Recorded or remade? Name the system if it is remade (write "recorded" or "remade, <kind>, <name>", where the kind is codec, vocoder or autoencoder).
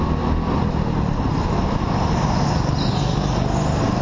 recorded